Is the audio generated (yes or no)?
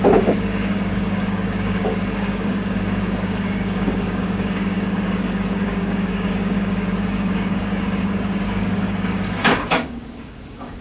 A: yes